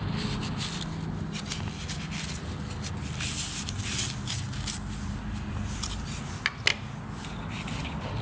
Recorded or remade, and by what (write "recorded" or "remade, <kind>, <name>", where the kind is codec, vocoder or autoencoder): recorded